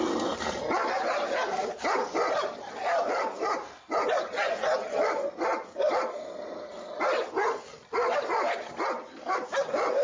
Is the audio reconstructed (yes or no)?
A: no